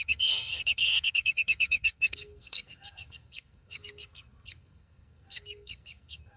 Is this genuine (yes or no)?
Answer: no